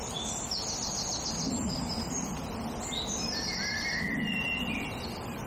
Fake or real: real